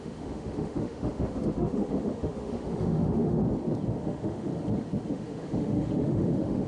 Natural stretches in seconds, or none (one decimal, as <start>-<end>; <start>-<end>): 3.4-4.0; 4.5-5.1